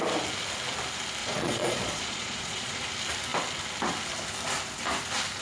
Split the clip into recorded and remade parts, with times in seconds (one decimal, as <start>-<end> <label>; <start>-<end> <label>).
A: 0.0-1.2 recorded; 1.2-2.9 remade; 2.9-5.4 recorded